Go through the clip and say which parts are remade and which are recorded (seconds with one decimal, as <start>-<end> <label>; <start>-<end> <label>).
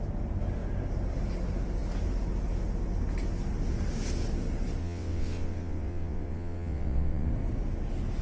0.0-4.8 recorded; 4.8-7.3 remade; 7.3-8.2 recorded